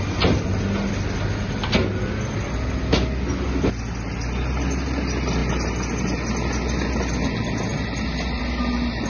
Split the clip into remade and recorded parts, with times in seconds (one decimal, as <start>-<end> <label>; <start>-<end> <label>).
0.0-9.1 recorded